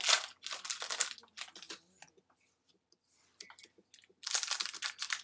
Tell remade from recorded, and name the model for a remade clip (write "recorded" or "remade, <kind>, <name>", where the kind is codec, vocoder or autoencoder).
recorded